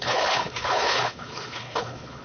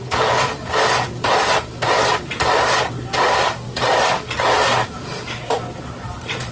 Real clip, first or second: second